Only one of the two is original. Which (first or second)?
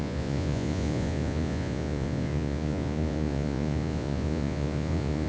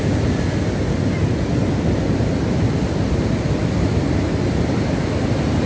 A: second